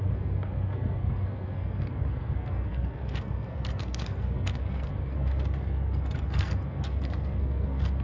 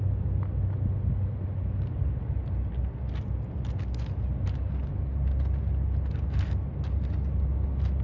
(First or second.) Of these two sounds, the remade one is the first